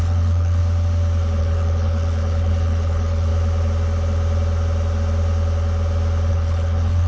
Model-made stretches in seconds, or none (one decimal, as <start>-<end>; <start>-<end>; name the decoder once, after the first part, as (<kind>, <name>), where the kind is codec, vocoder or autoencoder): 0.0-0.6 (codec, HILCodec); 1.4-3.3; 6.3-7.1